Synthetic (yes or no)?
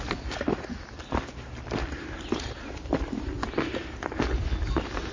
no